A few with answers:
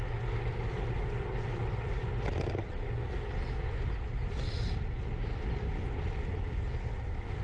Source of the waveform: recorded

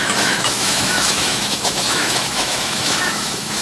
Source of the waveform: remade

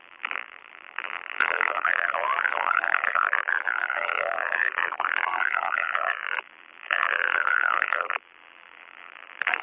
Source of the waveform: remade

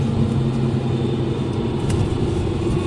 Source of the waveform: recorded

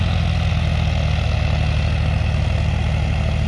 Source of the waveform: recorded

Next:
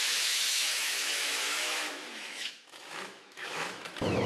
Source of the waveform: remade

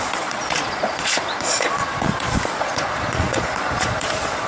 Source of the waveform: remade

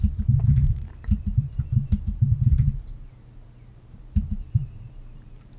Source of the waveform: remade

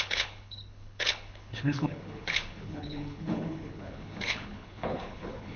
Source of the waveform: remade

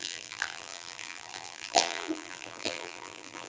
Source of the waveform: remade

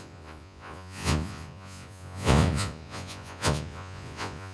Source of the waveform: remade